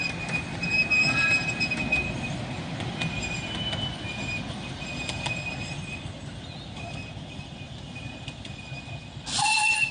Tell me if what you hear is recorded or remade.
recorded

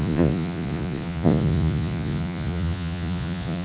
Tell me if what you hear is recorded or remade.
remade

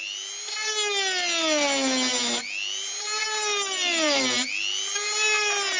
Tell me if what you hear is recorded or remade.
recorded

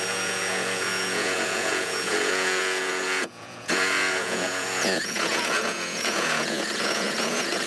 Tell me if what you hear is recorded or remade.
remade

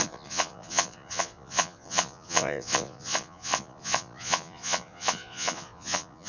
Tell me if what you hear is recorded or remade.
remade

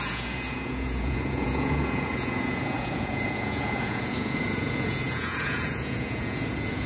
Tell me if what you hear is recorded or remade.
remade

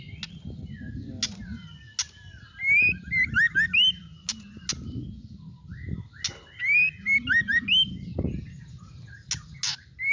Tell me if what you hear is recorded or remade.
recorded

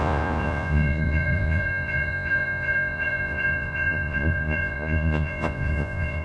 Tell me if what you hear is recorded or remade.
remade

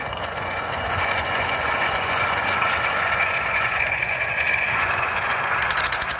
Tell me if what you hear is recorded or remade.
remade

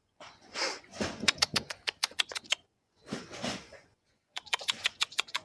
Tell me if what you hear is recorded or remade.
remade